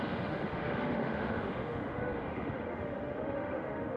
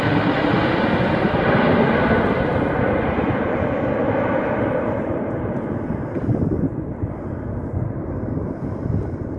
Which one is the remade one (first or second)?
first